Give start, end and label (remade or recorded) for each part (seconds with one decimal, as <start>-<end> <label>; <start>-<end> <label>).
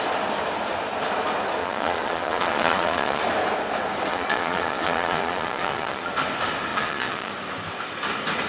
0.0-1.6 recorded; 1.6-3.2 remade; 3.2-4.1 recorded; 4.1-6.1 remade; 6.1-6.7 recorded; 6.7-7.3 remade; 7.3-8.5 recorded